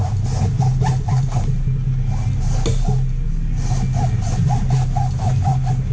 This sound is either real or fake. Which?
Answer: real